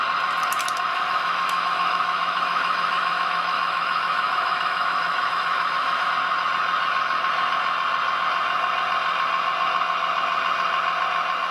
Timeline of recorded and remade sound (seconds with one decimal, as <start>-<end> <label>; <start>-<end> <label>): 0.0-0.9 recorded; 0.9-6.1 remade; 6.1-11.5 recorded